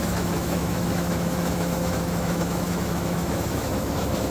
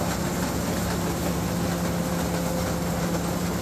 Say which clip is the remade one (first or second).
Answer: first